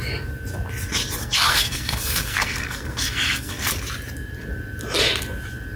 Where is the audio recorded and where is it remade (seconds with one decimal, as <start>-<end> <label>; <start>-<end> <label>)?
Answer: 0.0-1.2 recorded; 1.2-3.7 remade; 3.7-5.8 recorded